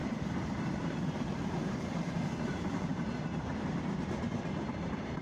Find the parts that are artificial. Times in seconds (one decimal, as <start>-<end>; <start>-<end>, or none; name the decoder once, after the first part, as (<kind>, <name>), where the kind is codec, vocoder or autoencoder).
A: 0.0-5.2 (vocoder, BigVGAN v2)